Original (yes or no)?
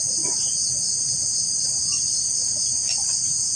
yes